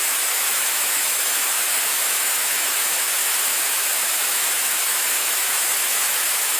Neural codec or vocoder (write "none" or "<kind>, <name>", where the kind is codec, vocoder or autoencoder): autoencoder, DAC-VAE